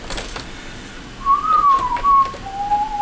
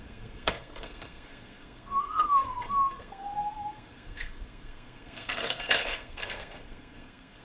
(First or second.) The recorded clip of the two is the first